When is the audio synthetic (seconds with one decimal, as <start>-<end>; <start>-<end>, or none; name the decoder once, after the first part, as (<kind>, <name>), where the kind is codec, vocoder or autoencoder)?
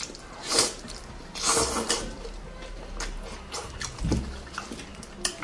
0.5-1.2 (vocoder, BigVGAN v2)